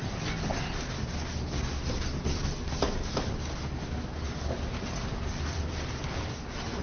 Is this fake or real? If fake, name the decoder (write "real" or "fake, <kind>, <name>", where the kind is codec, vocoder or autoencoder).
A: real